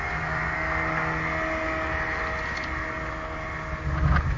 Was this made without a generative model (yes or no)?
yes